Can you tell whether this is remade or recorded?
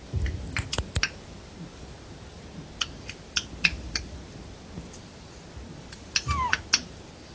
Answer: recorded